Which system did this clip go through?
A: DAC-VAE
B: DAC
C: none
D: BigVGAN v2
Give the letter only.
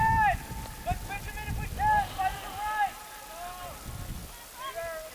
C